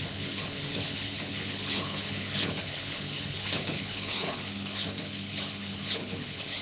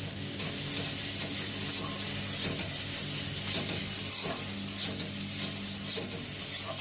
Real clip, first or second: second